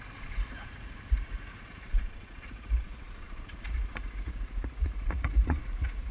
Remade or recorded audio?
remade